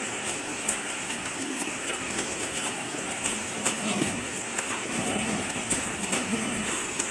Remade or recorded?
remade